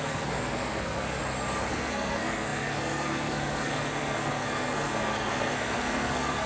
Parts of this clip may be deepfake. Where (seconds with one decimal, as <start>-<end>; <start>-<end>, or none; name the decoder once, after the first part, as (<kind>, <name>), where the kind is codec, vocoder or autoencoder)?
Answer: 0.0-1.2 (codec, SNAC); 1.7-6.5